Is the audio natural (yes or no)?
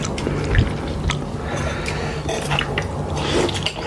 yes